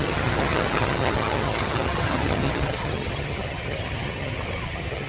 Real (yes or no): no